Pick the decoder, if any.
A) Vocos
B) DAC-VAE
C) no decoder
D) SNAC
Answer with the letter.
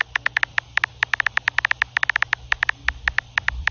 C